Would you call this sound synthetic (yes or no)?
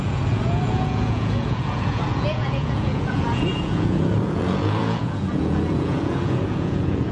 yes